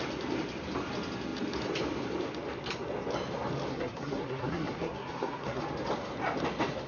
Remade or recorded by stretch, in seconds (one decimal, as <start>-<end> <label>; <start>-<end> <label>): 0.0-3.7 recorded; 3.7-5.6 remade; 5.6-6.9 recorded